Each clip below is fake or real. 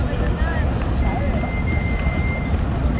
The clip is real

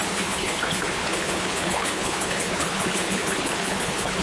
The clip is fake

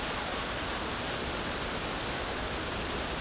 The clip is real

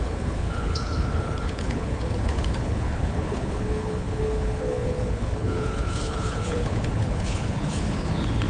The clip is fake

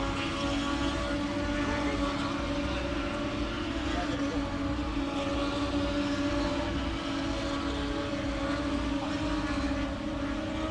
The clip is real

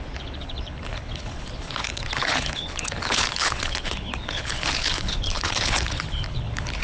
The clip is fake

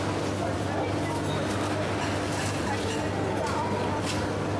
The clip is real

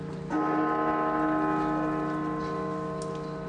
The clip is real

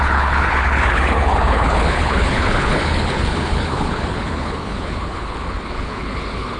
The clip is fake